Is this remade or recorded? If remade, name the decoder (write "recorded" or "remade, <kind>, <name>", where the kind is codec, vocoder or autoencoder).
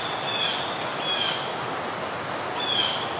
recorded